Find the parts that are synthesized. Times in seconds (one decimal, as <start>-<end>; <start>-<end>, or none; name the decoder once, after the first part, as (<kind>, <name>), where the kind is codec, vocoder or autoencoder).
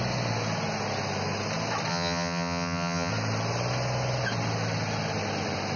1.9-3.1 (vocoder, HiFi-GAN)